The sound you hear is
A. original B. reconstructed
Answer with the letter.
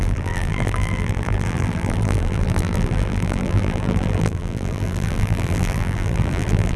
B